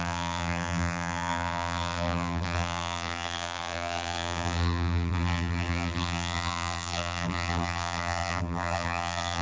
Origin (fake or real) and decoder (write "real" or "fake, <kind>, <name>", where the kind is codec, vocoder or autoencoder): fake, vocoder, BigVGAN v2